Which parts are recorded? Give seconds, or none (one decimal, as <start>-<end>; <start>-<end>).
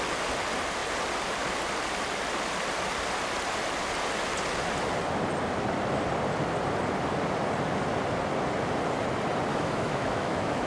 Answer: 0.0-9.5